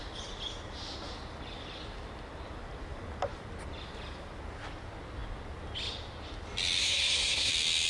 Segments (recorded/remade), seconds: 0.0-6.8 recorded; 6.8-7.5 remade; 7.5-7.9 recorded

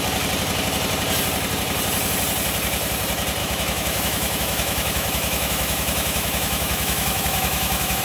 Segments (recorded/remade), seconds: 0.0-3.4 recorded; 3.4-8.0 remade

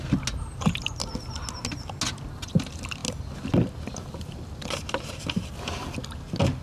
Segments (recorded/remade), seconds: 0.0-6.6 recorded